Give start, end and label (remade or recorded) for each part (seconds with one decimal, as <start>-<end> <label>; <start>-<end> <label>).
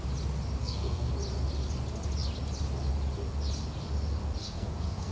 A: 0.0-0.6 recorded; 0.6-1.1 remade; 1.1-4.4 recorded; 4.4-5.1 remade